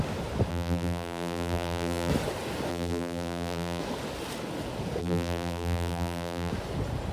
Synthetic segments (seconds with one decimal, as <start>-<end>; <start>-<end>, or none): 0.5-2.1; 2.7-3.8; 5.0-6.5